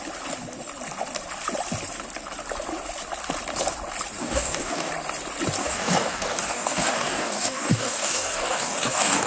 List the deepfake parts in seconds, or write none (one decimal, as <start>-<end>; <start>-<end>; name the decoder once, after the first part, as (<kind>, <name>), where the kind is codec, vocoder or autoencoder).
4.2-4.9 (codec, DAC); 5.6-9.3